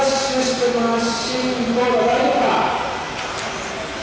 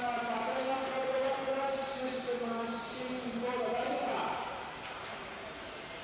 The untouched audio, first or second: first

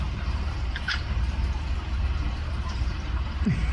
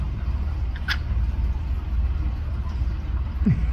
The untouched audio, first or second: second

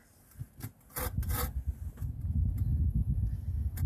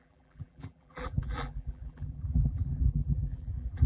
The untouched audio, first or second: first